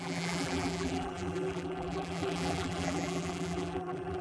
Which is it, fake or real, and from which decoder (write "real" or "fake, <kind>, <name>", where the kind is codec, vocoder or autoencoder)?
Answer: fake, vocoder, BigVGAN v2